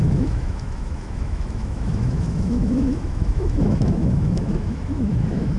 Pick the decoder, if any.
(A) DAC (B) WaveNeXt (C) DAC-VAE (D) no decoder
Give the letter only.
C